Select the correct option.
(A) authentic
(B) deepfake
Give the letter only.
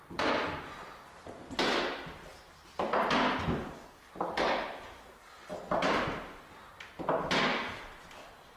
A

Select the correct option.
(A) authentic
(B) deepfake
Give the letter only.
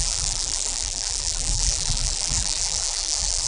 B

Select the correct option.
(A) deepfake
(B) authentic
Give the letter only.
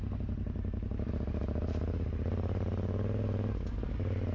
B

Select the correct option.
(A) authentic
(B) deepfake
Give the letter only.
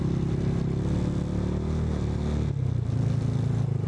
A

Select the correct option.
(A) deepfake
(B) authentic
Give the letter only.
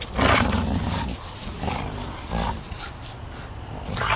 B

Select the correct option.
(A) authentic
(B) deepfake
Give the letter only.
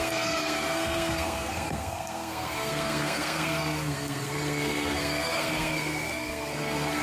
B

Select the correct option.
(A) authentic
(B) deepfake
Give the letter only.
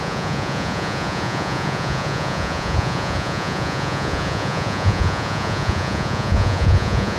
B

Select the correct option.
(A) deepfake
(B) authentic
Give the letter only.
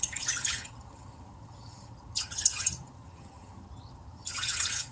A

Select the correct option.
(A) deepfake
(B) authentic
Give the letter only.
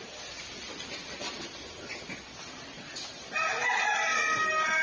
B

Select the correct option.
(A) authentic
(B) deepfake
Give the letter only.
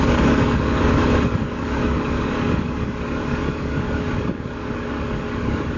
B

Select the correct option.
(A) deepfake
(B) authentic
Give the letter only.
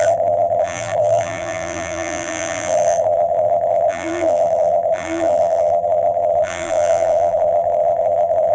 A